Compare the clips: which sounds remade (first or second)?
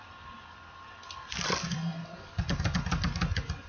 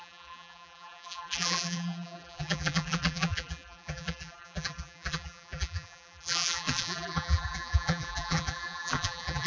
second